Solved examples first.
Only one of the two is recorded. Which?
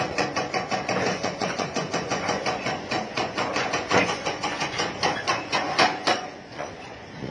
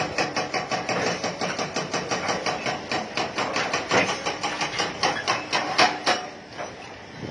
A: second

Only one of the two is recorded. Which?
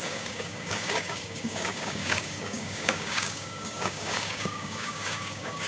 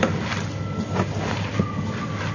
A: second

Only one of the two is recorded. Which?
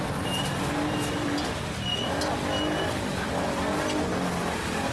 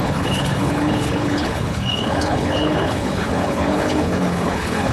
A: first